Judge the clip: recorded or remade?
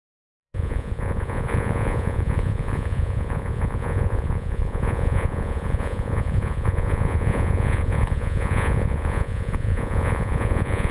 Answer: remade